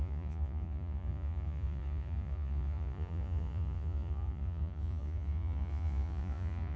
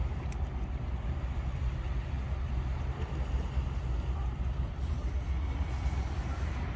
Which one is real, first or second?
second